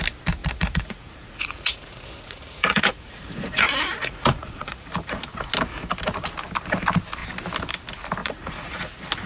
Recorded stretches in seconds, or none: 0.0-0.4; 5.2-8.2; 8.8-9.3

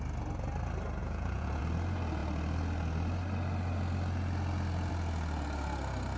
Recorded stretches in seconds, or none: 0.0-1.0; 1.6-6.2

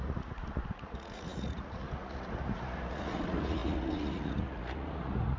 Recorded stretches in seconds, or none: none

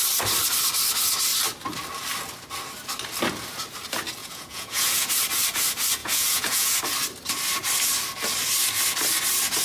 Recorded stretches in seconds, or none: 0.0-4.2; 5.1-6.0; 6.8-9.6